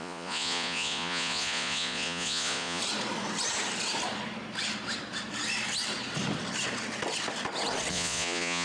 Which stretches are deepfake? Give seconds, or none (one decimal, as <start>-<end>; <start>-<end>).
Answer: 0.0-2.8; 7.9-8.6